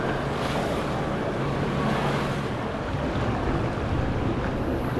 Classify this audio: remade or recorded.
recorded